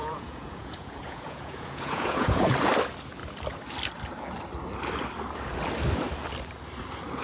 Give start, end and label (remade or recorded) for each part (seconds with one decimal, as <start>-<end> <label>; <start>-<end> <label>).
0.0-2.5 remade; 2.5-7.2 recorded